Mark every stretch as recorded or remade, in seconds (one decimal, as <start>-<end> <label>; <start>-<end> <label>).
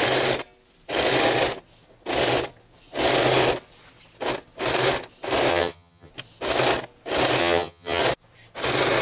0.0-5.5 recorded; 5.5-6.1 remade; 6.1-7.4 recorded; 7.4-8.0 remade; 8.0-9.0 recorded